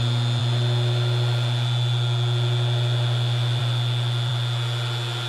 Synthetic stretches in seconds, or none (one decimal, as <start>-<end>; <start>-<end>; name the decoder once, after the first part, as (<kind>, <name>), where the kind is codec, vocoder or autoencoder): none